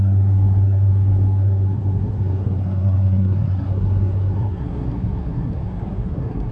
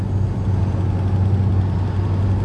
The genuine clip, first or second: second